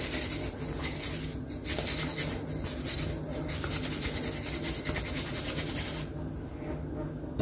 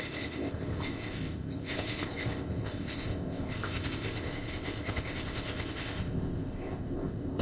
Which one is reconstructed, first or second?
second